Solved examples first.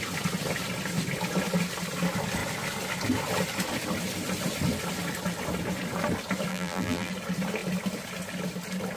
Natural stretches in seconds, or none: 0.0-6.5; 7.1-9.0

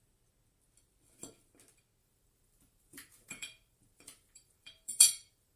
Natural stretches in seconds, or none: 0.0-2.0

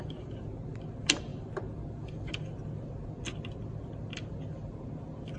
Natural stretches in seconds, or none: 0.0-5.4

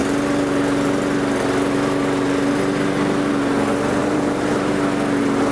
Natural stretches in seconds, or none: 0.0-4.0; 4.8-5.5

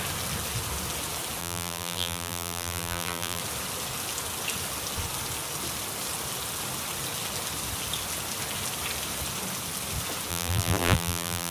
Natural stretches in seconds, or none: 0.0-1.4; 3.4-10.3

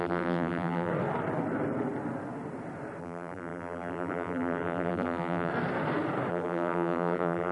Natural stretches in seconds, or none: 0.9-3.0; 5.5-6.3